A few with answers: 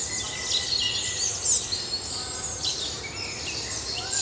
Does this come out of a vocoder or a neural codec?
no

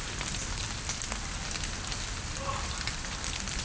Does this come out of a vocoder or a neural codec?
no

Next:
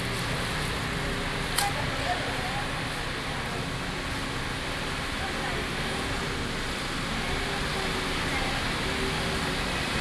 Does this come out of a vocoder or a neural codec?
no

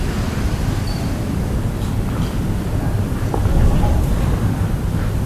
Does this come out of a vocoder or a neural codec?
yes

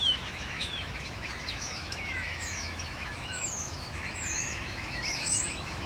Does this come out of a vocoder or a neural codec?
yes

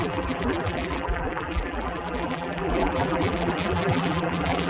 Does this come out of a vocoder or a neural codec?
yes